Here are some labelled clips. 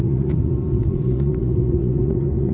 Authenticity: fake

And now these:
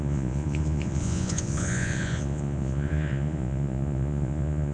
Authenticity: fake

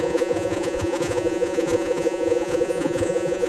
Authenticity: fake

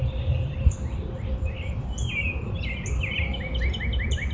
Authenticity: real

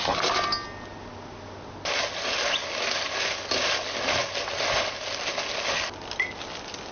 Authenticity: real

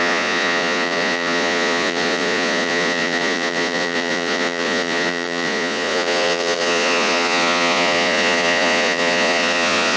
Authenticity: fake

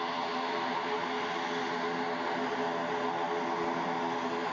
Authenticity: real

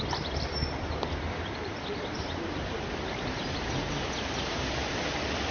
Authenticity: real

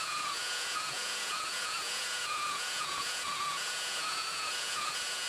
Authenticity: fake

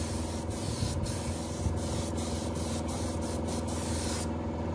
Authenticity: real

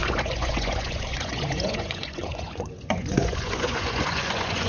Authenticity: fake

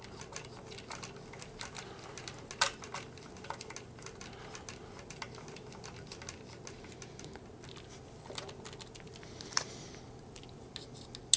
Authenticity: real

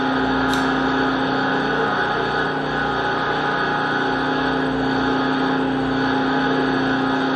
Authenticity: real